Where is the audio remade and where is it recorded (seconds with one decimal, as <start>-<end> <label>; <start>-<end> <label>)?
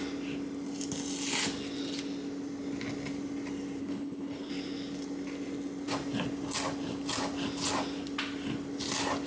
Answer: 0.0-3.8 recorded; 3.8-4.5 remade; 4.5-9.3 recorded